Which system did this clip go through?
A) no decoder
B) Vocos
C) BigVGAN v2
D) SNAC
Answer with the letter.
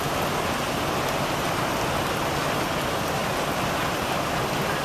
A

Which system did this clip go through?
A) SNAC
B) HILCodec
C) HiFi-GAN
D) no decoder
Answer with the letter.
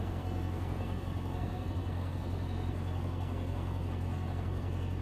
A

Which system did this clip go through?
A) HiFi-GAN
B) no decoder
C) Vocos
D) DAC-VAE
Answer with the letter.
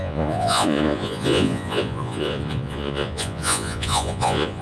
C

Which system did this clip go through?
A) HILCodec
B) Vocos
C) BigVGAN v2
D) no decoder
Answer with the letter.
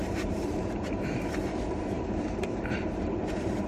C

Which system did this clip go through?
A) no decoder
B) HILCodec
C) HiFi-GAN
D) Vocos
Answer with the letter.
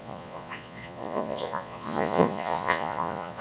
D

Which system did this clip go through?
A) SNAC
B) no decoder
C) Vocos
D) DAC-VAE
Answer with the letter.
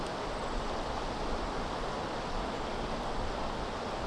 B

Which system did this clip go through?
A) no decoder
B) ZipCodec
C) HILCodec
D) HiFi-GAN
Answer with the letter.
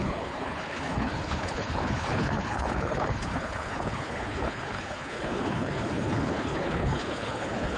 C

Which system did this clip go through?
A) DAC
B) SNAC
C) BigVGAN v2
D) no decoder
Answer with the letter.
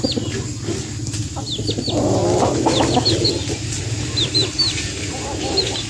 D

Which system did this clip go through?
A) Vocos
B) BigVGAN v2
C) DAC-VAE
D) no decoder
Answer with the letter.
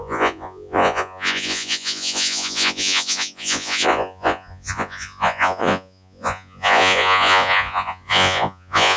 A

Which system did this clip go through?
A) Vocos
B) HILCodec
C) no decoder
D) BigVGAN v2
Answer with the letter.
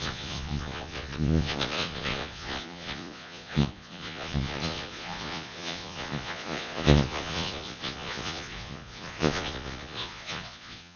A